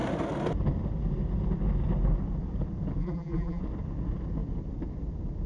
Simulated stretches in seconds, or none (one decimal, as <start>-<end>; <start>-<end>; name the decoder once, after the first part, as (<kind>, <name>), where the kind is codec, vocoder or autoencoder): 3.0-3.6 (vocoder, BigVGAN v2)